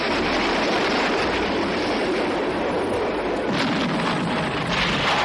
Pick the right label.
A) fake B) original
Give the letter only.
B